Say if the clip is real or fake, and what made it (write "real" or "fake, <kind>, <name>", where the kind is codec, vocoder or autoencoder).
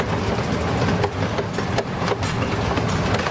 real